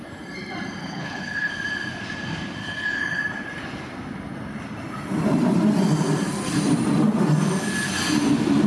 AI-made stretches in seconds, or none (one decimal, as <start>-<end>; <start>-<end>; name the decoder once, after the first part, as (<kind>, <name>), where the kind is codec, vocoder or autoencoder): 0.8-1.5 (codec, HILCodec); 2.6-3.2